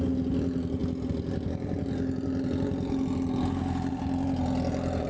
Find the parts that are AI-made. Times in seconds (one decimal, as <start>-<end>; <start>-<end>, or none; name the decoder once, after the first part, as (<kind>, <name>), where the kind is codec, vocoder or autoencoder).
none